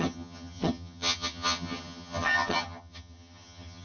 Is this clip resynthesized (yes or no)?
yes